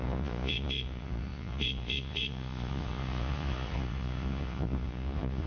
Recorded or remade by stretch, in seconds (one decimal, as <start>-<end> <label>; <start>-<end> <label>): 0.0-5.5 remade